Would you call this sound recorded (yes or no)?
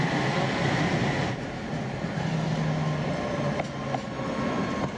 yes